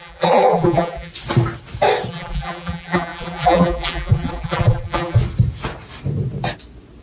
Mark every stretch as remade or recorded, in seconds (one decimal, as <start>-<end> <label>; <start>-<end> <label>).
0.0-1.1 remade; 1.1-2.1 recorded; 2.1-5.2 remade; 5.2-7.0 recorded

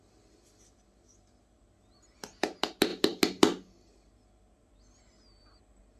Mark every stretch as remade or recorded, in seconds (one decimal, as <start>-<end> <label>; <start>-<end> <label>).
0.0-6.0 recorded

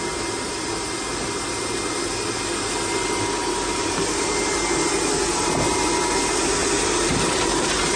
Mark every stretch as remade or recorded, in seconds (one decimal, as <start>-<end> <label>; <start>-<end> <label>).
0.0-6.6 recorded; 6.6-8.0 remade

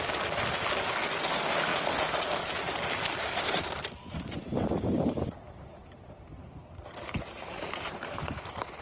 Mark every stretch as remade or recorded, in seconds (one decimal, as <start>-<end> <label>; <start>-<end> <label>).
0.0-4.4 recorded; 4.4-8.8 remade

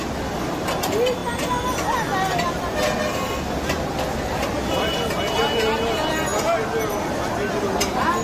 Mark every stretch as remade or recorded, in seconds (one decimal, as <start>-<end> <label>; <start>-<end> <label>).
0.0-8.2 recorded